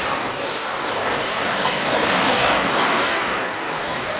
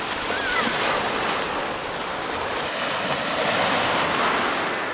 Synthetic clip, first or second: first